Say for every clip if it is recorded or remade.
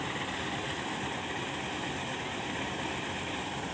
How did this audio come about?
recorded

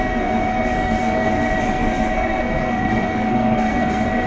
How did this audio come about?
remade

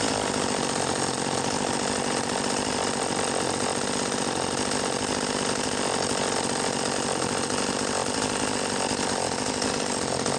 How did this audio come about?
recorded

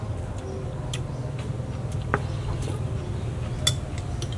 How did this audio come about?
recorded